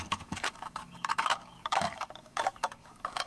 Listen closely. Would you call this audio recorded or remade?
remade